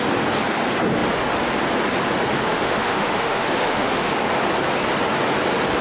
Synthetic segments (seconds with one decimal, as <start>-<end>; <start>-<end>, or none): 2.5-4.1